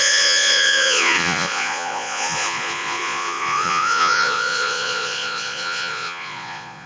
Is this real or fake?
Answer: fake